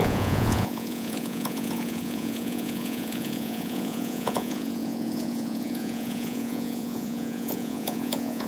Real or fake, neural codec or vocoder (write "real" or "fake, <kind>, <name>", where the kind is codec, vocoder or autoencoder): fake, vocoder, Vocos